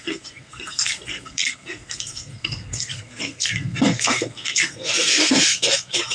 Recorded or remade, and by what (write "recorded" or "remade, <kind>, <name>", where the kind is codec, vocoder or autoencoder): remade, codec, SNAC